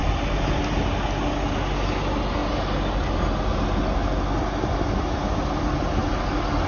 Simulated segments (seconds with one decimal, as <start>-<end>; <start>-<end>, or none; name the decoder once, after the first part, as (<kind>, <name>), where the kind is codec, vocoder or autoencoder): none